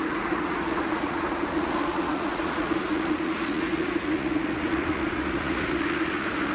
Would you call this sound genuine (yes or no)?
no